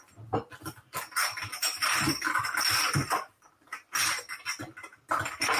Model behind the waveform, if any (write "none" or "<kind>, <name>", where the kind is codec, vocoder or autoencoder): none